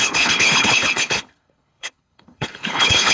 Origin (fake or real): fake